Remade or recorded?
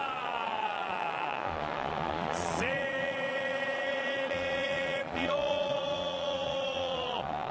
remade